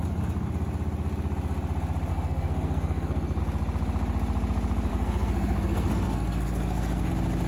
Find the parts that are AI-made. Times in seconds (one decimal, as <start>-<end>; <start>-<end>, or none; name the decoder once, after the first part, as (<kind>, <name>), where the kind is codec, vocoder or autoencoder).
2.1-3.4 (codec, SNAC); 4.9-7.1

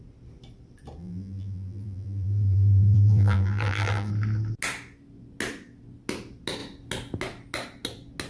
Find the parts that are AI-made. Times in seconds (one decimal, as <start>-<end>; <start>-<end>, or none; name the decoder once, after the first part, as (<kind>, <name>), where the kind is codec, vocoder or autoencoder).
1.0-4.1 (vocoder, BigVGAN v2)

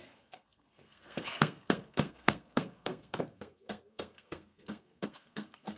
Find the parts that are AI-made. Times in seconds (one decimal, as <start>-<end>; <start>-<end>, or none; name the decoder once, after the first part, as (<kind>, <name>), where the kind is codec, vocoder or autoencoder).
0.0-5.8 (codec, SNAC)

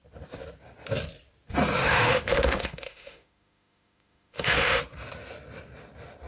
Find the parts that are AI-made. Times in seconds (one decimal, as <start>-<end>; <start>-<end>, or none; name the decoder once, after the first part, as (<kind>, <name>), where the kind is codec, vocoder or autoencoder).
1.8-4.8 (autoencoder, DAC-VAE)

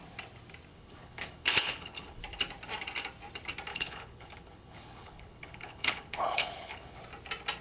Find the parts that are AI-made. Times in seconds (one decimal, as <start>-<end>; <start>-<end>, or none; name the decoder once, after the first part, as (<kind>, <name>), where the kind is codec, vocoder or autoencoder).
0.7-2.2 (codec, HILCodec); 3.7-7.0

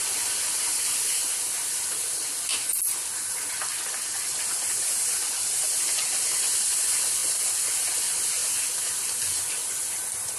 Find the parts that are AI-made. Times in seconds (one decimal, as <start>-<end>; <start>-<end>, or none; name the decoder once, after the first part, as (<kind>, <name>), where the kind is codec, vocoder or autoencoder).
none